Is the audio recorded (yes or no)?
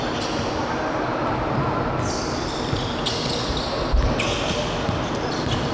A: yes